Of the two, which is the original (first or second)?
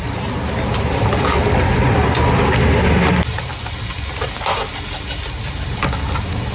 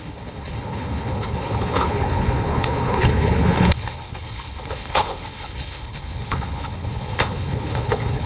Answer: first